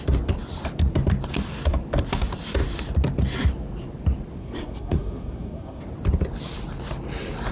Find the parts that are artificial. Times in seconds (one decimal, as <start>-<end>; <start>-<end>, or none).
4.4-5.8